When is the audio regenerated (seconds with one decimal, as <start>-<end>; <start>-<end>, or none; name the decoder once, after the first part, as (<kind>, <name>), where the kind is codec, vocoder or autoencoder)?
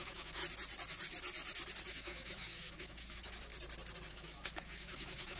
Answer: 0.0-0.4 (autoencoder, DAC-VAE); 1.9-3.5; 4.1-5.4